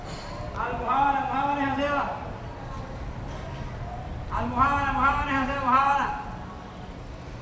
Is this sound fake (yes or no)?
no